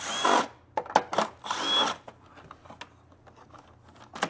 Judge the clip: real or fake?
real